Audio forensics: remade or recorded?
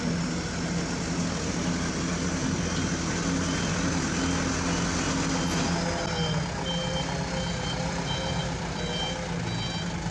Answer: recorded